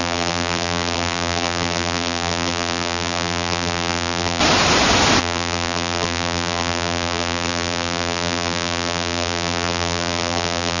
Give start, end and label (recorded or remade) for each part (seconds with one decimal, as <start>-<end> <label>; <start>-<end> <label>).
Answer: 0.0-4.4 remade; 4.4-5.2 recorded; 5.2-10.8 remade